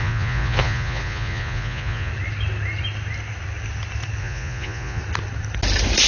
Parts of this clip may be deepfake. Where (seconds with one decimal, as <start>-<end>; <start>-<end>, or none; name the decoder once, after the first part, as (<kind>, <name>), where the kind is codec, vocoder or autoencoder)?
0.0-2.1 (vocoder, Vocos); 4.2-5.0